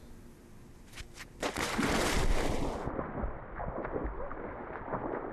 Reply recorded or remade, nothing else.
recorded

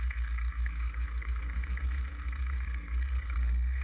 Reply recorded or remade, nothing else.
remade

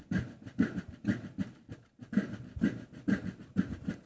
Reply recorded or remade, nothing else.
recorded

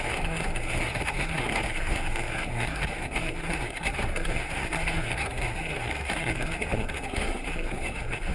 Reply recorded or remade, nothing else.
remade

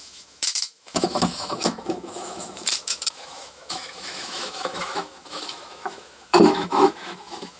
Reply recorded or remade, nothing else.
remade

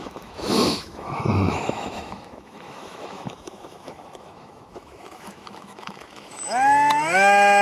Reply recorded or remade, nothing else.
remade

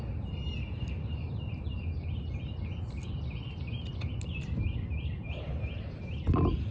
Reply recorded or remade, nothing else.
recorded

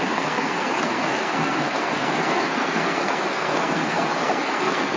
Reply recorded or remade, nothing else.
remade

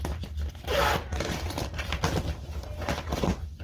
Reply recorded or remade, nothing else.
recorded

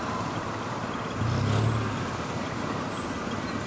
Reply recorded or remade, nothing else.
recorded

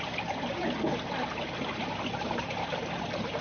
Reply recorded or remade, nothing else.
recorded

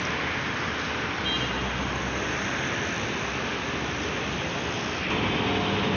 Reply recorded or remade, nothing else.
recorded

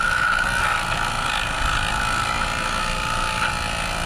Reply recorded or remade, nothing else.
recorded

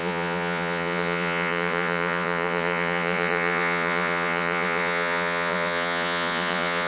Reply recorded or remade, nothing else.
remade